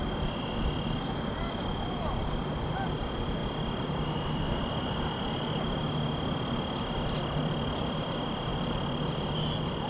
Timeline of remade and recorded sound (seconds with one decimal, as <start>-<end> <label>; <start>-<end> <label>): 0.0-3.4 remade; 3.4-7.6 recorded; 7.6-8.5 remade; 8.5-9.1 recorded; 9.1-9.9 remade